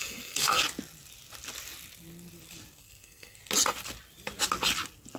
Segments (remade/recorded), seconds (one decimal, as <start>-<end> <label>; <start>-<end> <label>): 0.0-0.6 remade; 0.6-2.8 recorded; 2.8-3.4 remade; 3.4-5.2 recorded